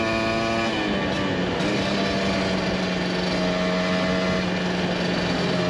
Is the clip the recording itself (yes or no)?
yes